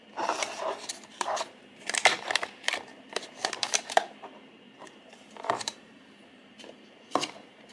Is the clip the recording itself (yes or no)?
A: no